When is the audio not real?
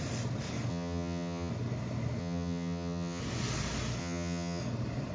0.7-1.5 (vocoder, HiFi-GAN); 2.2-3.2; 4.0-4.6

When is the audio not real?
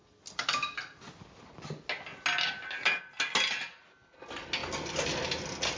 none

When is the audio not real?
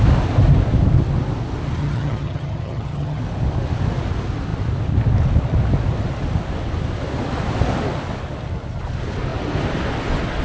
1.8-3.2 (vocoder, HiFi-GAN)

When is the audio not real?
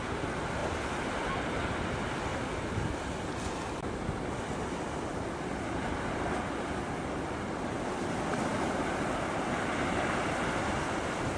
none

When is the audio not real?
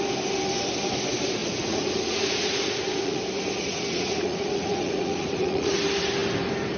1.4-3.2 (vocoder, Vocos); 3.6-5.7